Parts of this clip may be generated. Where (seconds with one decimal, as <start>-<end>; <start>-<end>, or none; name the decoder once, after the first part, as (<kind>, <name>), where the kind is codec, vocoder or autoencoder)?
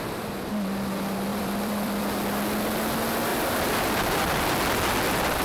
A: 1.3-2.0 (vocoder, BigVGAN v2); 3.3-4.6